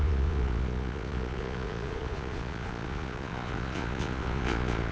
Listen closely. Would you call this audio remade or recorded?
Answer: remade